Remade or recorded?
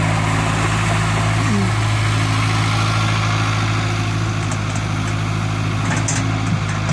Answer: recorded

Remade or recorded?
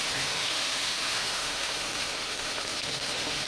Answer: remade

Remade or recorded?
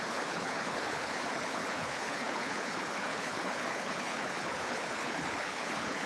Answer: remade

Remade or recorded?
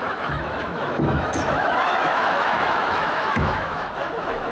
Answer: remade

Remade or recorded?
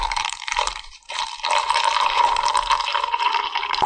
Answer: remade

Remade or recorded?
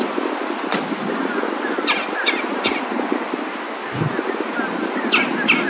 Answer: recorded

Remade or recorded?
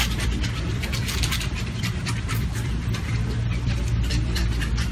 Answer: remade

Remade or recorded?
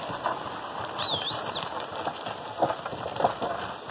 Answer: recorded